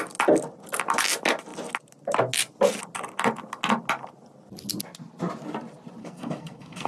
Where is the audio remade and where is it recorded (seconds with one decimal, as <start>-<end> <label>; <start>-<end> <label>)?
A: 0.0-6.0 recorded; 6.0-6.9 remade